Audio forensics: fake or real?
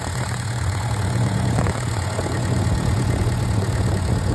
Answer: fake